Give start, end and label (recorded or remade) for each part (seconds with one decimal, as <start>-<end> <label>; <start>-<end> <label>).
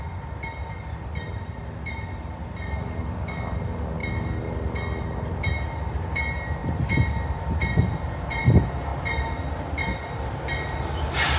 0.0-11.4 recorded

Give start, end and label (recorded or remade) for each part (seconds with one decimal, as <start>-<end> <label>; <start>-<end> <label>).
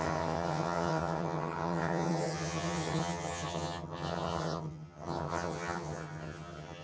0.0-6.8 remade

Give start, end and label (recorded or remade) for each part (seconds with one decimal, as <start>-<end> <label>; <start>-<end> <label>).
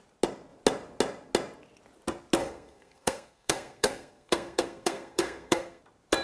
0.0-2.4 recorded; 2.4-5.8 remade; 5.8-6.2 recorded